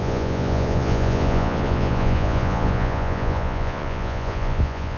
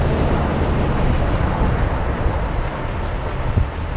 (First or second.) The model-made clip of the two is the first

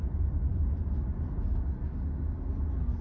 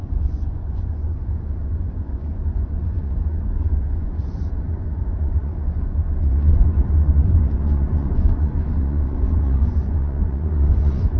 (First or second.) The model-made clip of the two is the second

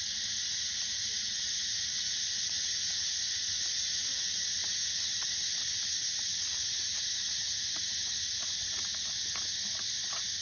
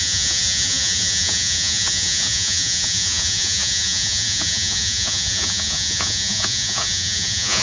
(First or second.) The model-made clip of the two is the second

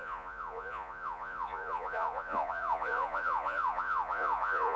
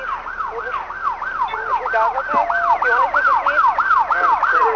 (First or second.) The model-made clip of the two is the first